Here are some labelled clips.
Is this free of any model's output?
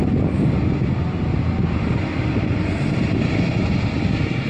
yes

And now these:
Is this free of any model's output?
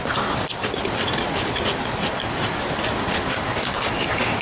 yes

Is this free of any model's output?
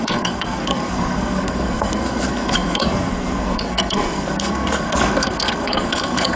no